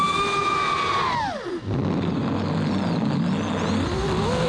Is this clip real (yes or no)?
yes